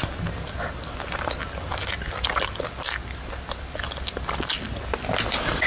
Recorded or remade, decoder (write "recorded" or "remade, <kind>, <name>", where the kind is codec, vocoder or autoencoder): recorded